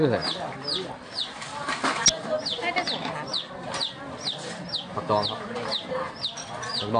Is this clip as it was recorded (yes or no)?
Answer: yes